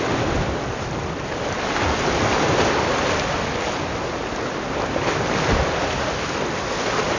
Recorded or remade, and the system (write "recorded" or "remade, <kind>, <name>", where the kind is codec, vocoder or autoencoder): recorded